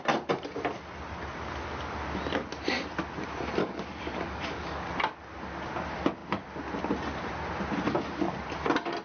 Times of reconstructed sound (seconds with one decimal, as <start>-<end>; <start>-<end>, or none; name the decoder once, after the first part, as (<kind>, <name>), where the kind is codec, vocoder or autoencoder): 3.6-4.9 (codec, DAC)

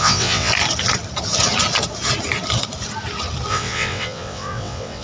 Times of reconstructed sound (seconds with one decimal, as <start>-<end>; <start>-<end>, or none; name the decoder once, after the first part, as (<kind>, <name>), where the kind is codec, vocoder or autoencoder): 0.0-0.5 (vocoder, WaveNeXt); 3.5-5.0

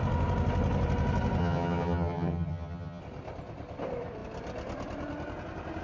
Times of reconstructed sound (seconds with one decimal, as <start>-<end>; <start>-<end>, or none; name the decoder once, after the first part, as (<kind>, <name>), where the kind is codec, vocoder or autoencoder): 1.4-3.0 (vocoder, HiFi-GAN)

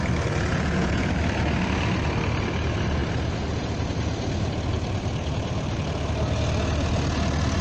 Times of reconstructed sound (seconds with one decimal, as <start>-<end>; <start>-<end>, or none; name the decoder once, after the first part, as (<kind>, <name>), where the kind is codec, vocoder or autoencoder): 0.5-1.1 (vocoder, Vocos)